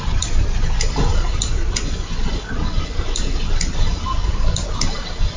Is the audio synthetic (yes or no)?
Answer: no